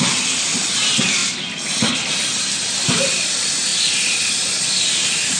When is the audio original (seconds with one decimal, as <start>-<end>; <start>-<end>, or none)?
0.0-5.4